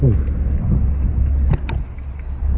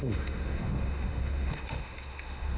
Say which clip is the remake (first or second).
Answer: second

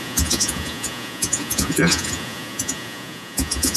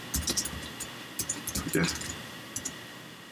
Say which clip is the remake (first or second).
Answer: first